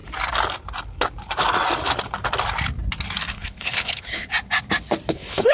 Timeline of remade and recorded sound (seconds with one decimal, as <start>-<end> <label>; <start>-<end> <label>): 0.0-3.3 recorded; 3.3-4.3 remade; 4.3-5.1 recorded; 5.1-5.5 remade